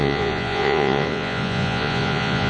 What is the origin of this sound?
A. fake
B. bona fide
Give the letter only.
A